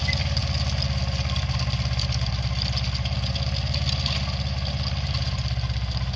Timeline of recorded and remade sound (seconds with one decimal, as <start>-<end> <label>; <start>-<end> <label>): 0.0-6.2 recorded